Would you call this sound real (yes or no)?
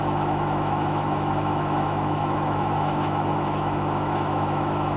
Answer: no